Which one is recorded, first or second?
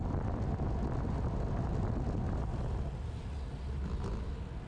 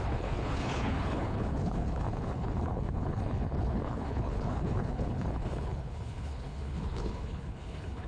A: first